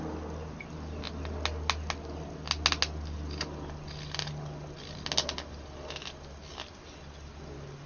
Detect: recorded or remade recorded